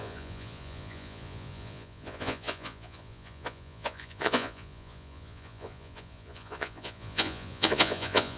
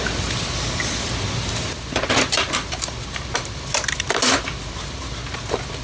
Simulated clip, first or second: first